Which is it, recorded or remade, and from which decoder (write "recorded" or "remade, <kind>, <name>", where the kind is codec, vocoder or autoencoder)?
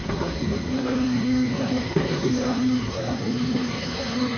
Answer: remade, codec, SNAC